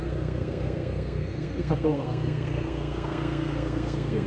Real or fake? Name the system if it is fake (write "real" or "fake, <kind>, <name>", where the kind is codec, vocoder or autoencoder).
fake, codec, SNAC